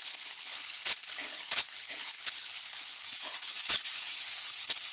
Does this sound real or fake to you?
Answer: fake